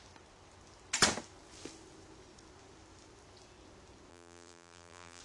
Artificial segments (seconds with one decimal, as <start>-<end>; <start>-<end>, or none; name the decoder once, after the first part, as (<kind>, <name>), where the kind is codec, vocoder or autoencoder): 4.1-5.2 (vocoder, BigVGAN v2)